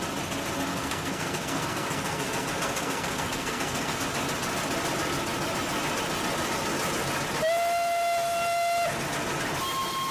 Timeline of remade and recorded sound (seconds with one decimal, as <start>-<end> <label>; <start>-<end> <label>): 0.0-0.7 recorded; 0.7-4.0 remade; 4.0-10.1 recorded